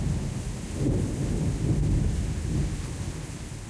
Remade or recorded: recorded